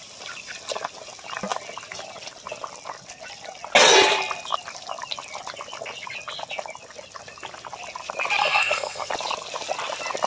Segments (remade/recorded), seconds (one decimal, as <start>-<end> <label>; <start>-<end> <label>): 0.0-8.4 recorded; 8.4-9.1 remade; 9.1-10.3 recorded